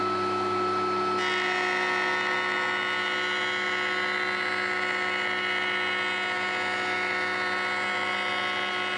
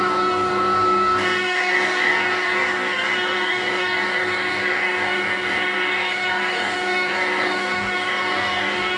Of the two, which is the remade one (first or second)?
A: second